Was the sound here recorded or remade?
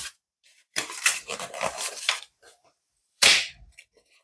remade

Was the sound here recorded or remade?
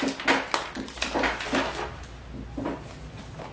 recorded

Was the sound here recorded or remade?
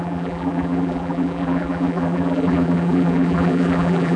remade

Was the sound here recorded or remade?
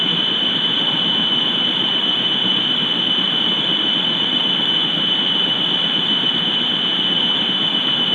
remade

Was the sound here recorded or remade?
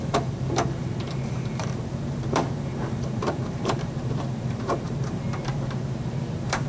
remade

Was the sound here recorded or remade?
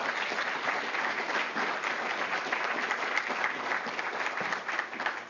recorded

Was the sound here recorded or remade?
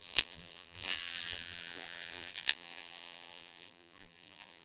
remade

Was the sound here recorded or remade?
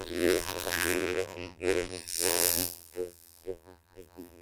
remade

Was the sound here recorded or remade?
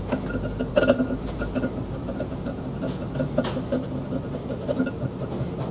recorded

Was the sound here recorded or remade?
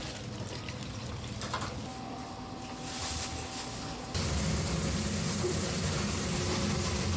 recorded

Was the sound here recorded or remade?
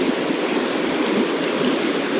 recorded